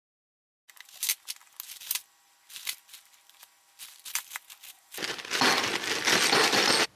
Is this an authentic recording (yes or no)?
yes